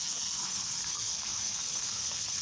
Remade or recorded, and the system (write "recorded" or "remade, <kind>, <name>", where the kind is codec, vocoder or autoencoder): remade, codec, SNAC